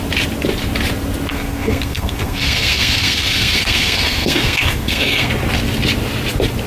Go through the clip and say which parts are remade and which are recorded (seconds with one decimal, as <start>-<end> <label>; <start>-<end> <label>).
0.0-1.3 recorded; 1.3-5.3 remade; 5.3-6.7 recorded

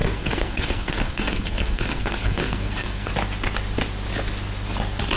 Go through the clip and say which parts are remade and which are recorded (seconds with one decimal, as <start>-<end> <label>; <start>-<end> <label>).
0.0-3.1 remade; 3.1-5.2 recorded